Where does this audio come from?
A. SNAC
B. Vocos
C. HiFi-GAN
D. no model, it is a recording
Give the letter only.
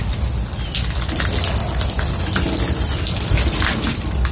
D